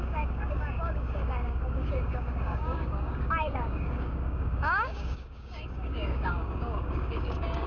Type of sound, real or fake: fake